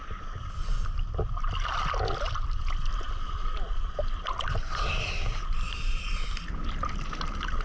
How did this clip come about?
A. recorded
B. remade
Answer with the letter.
A